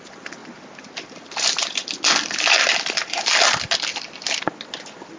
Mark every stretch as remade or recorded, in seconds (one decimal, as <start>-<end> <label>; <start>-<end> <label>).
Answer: 0.0-5.2 recorded